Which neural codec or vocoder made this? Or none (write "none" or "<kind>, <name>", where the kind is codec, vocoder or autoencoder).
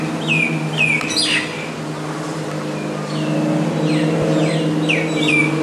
none